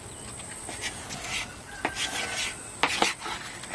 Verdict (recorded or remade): recorded